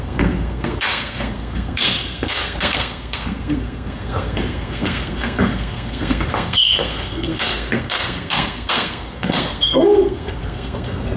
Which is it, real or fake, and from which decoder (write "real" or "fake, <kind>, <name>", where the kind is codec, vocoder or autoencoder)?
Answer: fake, codec, SNAC